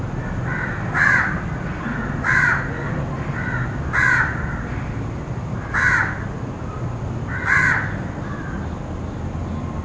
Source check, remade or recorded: recorded